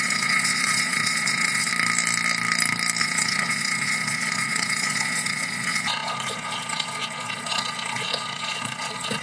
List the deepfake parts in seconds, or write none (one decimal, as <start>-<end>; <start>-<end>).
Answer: 0.0-1.7; 3.0-9.2